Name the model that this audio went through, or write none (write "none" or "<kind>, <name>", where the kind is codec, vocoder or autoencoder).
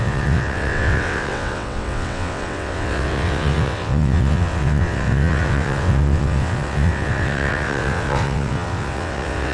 vocoder, WaveNeXt